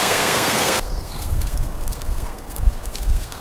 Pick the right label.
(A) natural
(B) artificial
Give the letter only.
B